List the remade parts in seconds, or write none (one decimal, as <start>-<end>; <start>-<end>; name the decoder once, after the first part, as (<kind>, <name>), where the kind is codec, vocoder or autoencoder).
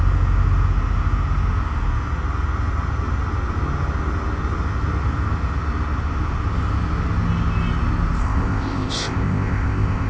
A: 8.2-10.1 (codec, ZipCodec)